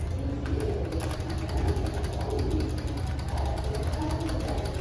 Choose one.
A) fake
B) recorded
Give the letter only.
B